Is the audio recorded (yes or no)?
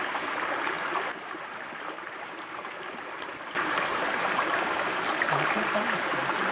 no